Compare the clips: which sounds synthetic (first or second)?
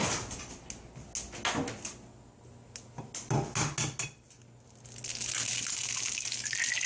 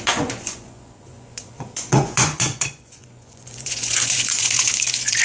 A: second